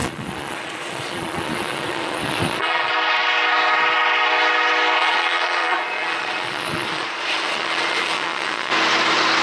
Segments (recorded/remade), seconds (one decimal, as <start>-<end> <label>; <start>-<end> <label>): 0.0-2.9 remade; 2.9-5.0 recorded; 5.0-8.7 remade; 8.7-9.4 recorded